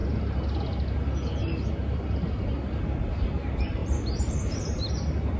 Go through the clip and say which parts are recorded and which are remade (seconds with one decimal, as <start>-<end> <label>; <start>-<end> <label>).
0.0-3.8 recorded; 3.8-5.4 remade